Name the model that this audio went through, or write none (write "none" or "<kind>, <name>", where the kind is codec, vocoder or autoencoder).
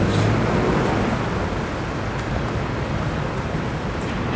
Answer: none